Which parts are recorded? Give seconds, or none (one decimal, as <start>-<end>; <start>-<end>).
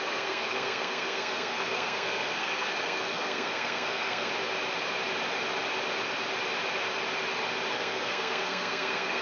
4.3-7.7